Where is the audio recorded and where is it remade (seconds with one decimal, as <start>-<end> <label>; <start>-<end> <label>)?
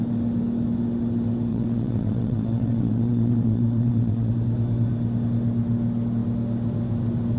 0.0-1.5 recorded; 1.5-4.3 remade; 4.3-7.4 recorded